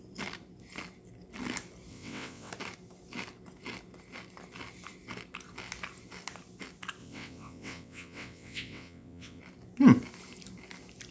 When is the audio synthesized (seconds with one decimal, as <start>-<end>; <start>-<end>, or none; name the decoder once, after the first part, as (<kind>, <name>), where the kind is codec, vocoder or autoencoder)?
1.9-2.5 (vocoder, WaveNeXt); 7.0-9.4

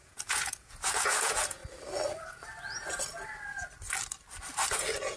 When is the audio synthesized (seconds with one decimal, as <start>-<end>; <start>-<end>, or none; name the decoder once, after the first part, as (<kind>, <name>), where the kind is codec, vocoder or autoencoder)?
0.0-1.6 (vocoder, Vocos); 4.7-5.2

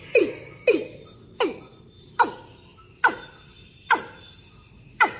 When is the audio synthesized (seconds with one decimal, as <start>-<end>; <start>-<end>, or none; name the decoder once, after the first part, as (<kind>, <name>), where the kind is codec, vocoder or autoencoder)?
none

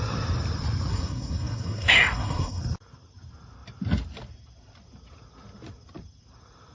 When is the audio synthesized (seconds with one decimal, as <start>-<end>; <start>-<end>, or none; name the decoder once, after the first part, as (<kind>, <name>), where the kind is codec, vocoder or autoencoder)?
0.9-2.6 (codec, SNAC)